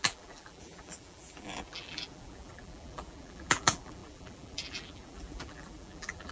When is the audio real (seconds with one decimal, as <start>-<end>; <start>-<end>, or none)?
none